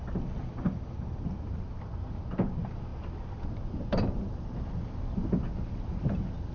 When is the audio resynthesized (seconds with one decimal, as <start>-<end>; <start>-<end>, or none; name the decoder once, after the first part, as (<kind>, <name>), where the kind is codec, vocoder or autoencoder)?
none